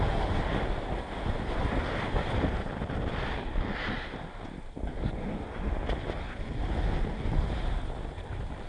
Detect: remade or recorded recorded